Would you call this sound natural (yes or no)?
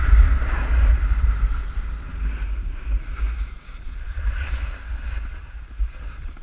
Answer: yes